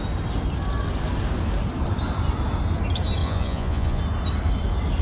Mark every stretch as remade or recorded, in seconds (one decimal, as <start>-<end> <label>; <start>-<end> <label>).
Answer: 0.0-3.2 recorded; 3.2-4.0 remade; 4.0-5.0 recorded